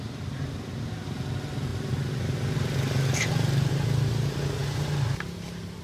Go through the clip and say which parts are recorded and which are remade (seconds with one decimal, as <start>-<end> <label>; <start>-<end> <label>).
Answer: 0.0-5.8 recorded